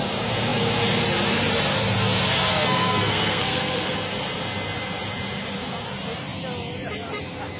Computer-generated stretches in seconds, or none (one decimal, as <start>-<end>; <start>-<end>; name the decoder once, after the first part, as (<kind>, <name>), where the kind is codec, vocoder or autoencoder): 2.5-3.9 (codec, SNAC)